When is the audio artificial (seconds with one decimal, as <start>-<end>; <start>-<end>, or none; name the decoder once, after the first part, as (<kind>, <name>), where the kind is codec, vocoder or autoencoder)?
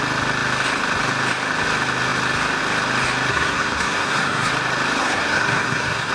3.3-4.5 (codec, SNAC); 5.0-6.1